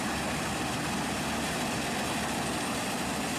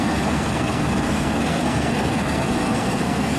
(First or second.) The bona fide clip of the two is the first